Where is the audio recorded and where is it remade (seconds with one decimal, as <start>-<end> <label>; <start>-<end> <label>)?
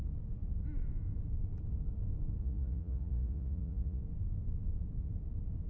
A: 0.0-2.4 recorded; 2.4-4.0 remade; 4.0-5.7 recorded